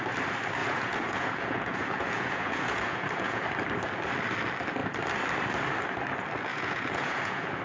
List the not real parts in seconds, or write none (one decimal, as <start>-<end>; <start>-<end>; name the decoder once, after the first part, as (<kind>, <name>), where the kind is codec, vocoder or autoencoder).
0.6-3.4 (vocoder, Vocos); 6.5-7.6